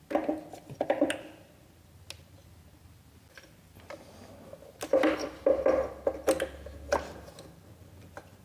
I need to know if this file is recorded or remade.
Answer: recorded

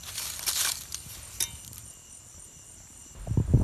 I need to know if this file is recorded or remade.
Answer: recorded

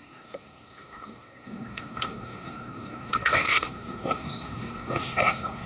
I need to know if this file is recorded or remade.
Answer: remade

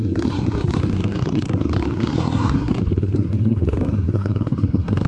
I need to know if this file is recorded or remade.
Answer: remade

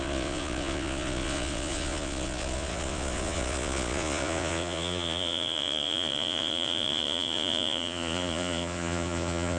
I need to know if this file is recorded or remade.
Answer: remade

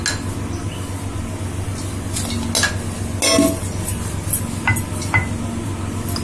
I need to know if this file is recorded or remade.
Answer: recorded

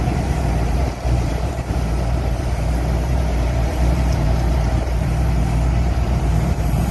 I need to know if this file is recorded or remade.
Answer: remade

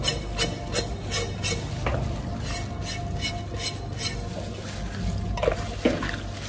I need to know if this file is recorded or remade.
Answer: recorded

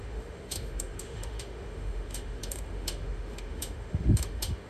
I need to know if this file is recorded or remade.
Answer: remade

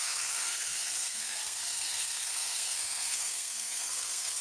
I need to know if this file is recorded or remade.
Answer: remade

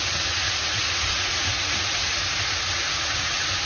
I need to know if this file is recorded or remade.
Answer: remade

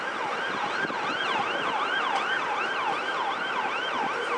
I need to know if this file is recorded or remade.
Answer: remade